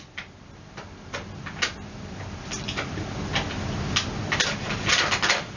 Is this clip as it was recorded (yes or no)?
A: yes